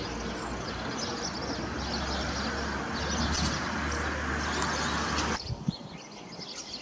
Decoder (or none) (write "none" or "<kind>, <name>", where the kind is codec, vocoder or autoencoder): none